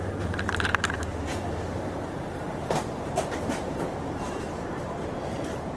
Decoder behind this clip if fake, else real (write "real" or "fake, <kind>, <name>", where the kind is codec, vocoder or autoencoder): fake, vocoder, BigVGAN v2